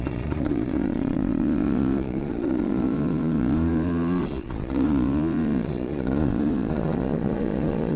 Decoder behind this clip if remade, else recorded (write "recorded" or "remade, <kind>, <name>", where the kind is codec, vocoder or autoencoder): remade, vocoder, Vocos